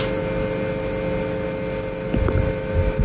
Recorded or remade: recorded